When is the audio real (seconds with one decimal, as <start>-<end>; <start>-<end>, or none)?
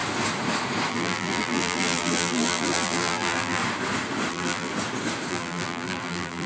0.0-0.9; 3.6-4.3; 4.7-5.3